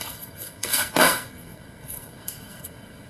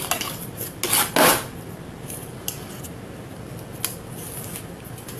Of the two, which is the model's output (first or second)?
first